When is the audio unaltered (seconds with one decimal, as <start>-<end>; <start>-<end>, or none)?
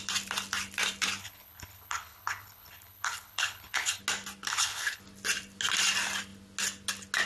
0.0-1.2; 4.0-4.5; 5.0-7.3